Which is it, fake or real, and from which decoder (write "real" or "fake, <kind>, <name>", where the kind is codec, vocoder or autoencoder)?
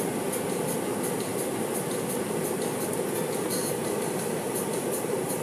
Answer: real